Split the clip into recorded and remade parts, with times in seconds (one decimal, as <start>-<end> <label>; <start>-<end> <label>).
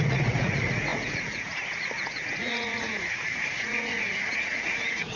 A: 0.0-5.2 remade